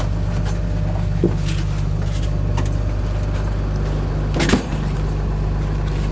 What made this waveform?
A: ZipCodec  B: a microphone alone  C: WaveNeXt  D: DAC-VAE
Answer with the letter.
B